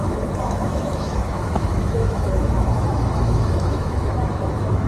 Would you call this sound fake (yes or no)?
yes